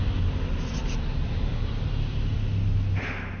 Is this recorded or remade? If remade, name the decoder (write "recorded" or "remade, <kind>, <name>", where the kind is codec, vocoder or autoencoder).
recorded